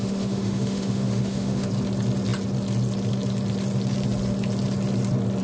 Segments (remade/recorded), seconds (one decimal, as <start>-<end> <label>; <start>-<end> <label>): 0.0-1.7 remade; 1.7-5.4 recorded